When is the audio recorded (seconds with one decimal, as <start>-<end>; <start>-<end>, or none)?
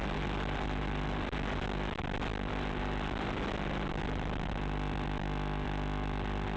0.0-6.6